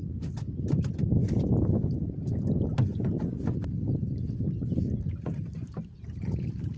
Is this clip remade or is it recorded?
recorded